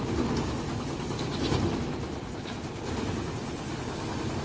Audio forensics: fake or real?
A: real